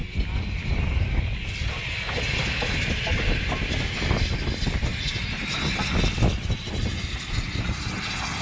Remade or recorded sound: recorded